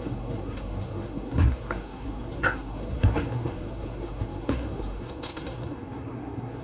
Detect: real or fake fake